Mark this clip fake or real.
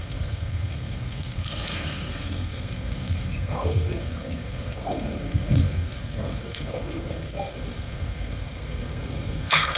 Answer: fake